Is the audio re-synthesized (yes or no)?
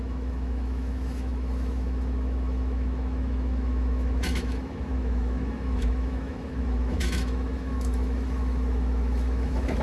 yes